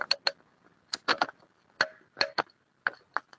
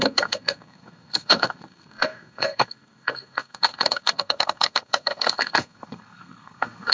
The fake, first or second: second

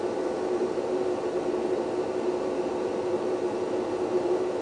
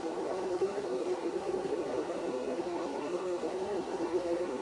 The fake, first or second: second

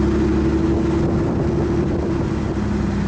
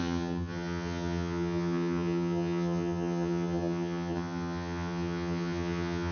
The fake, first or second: second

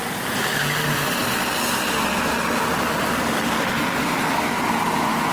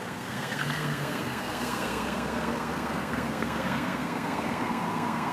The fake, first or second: second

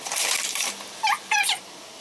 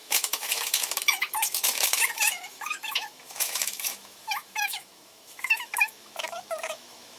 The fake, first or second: second